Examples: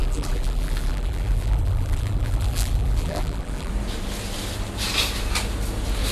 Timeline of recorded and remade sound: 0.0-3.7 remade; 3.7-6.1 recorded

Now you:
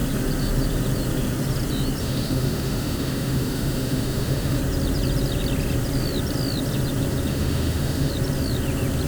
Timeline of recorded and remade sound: 0.0-2.0 recorded; 2.0-4.6 remade; 4.6-7.3 recorded; 7.3-8.1 remade; 8.1-9.1 recorded

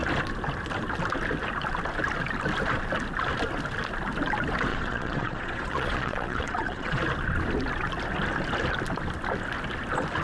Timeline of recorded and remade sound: 0.0-4.7 recorded; 4.7-7.0 remade; 7.0-10.2 recorded

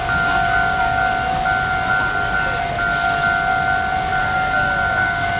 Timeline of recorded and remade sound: 0.0-1.0 remade; 1.0-4.2 recorded; 4.2-5.4 remade

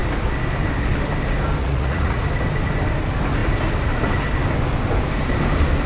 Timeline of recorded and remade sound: 0.0-1.6 recorded; 1.6-2.2 remade; 2.2-5.9 recorded

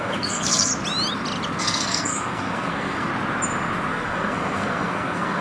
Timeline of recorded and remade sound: 0.0-0.7 remade; 0.7-1.6 recorded; 1.6-3.1 remade; 3.1-3.9 recorded; 3.9-5.4 remade